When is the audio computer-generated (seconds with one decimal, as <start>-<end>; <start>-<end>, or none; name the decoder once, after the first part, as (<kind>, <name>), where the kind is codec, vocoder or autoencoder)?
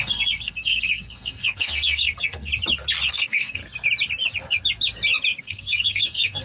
0.0-2.5 (codec, SNAC); 3.1-3.6; 5.4-6.4